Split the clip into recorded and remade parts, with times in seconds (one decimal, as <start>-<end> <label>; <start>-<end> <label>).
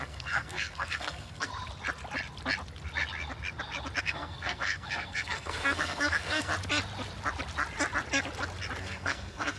0.0-1.5 remade; 1.5-4.0 recorded; 4.0-6.5 remade; 6.5-8.8 recorded; 8.8-9.6 remade